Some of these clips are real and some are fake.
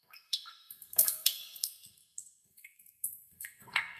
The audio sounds fake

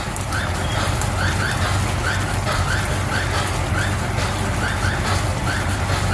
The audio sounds real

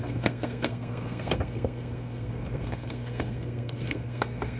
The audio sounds fake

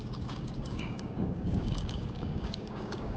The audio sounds fake